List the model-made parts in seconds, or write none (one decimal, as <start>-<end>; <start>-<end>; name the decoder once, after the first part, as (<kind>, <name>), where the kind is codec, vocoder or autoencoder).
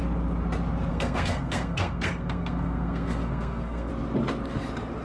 0.9-3.9 (codec, SNAC)